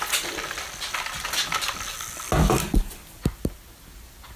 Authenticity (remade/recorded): recorded